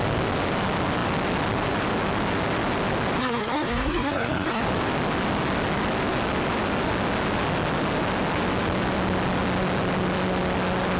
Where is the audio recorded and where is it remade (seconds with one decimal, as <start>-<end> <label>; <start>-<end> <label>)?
0.0-3.2 recorded; 3.2-4.6 remade; 4.6-11.0 recorded